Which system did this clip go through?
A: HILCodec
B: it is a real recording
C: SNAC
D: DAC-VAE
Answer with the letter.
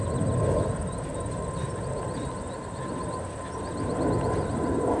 B